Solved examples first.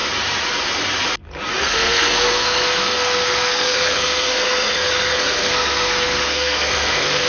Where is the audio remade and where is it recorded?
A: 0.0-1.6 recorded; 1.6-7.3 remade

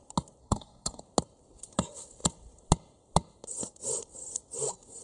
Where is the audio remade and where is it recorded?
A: 0.0-0.4 recorded; 0.4-1.0 remade; 1.0-5.0 recorded

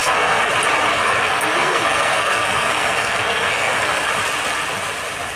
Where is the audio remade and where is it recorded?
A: 0.0-0.5 remade; 0.5-0.9 recorded; 0.9-4.1 remade; 4.1-5.4 recorded

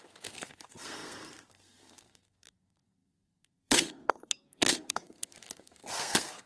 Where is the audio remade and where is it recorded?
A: 0.0-6.5 remade

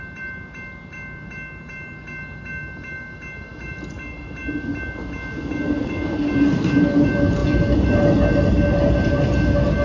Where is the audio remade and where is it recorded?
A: 0.0-9.8 recorded

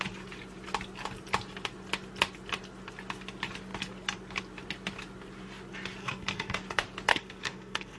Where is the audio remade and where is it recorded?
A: 0.0-6.0 recorded; 6.0-6.6 remade; 6.6-7.1 recorded; 7.1-8.0 remade

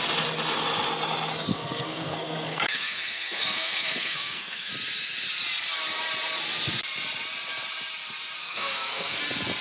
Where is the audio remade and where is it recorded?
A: 0.0-1.5 recorded; 1.5-4.7 remade; 4.7-8.4 recorded; 8.4-9.2 remade; 9.2-9.6 recorded